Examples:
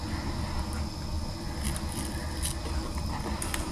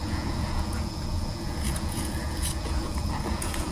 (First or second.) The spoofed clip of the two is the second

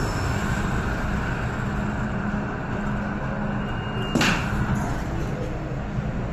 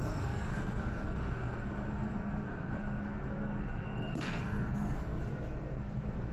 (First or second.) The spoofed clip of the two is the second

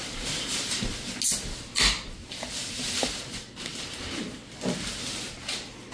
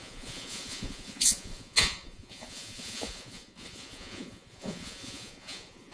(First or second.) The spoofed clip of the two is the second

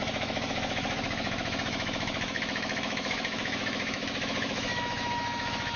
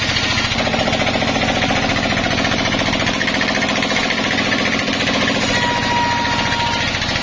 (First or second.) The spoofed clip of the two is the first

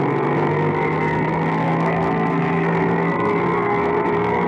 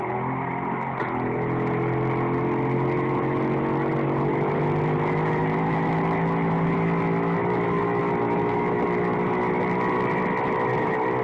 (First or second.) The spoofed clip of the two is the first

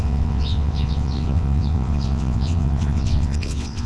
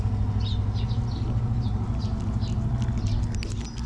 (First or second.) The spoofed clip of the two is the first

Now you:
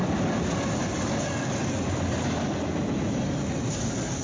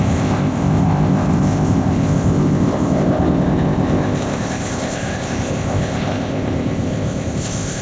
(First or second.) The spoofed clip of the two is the second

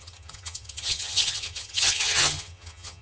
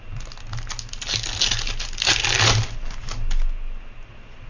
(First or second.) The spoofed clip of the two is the first